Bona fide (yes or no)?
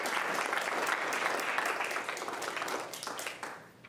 yes